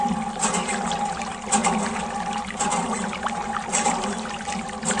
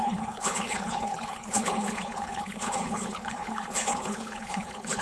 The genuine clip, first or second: first